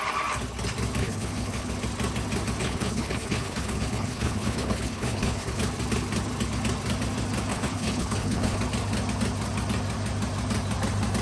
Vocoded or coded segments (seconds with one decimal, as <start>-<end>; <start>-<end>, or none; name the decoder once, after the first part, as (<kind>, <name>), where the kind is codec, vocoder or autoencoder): 1.0-1.7 (codec, HILCodec); 2.6-5.6; 7.5-8.6